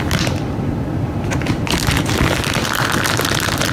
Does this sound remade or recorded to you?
recorded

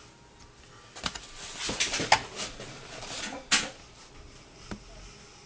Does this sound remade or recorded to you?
recorded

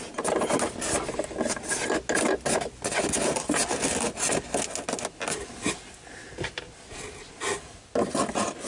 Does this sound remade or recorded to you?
recorded